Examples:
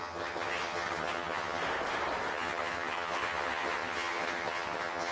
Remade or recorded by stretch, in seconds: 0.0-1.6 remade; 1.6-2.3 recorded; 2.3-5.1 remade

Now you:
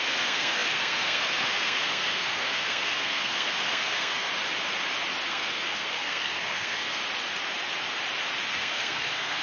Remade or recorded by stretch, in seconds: 0.0-4.3 remade; 4.3-5.3 recorded; 5.3-7.0 remade; 7.0-8.6 recorded; 8.6-9.4 remade

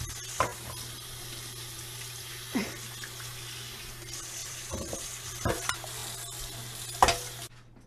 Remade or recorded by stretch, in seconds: 0.0-4.4 recorded; 4.4-5.5 remade; 5.5-7.9 recorded